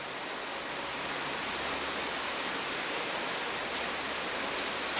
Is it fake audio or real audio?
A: real